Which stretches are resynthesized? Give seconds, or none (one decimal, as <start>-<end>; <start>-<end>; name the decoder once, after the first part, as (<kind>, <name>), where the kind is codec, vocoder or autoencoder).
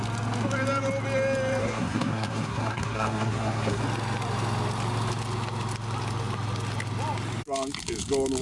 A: 1.6-3.8 (codec, SNAC)